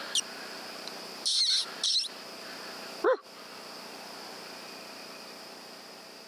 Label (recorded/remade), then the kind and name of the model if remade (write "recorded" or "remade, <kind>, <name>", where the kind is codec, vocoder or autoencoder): recorded